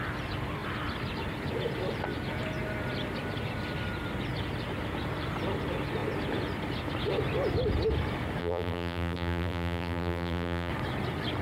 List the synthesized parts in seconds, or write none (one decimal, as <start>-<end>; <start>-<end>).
8.4-10.7